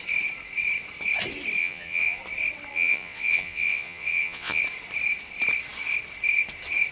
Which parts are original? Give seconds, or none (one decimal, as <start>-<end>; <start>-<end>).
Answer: 0.0-1.6; 2.2-2.7; 4.6-6.9